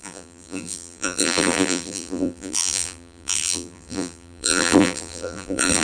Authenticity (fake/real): fake